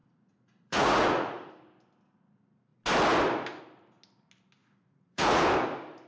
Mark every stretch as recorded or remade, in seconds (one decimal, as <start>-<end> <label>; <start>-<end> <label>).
0.0-1.5 remade; 1.5-4.6 recorded; 4.6-5.4 remade; 5.4-6.1 recorded